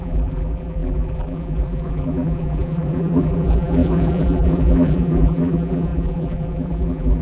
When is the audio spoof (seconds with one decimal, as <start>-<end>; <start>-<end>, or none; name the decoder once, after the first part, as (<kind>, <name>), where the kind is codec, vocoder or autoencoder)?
0.0-7.2 (vocoder, BigVGAN v2)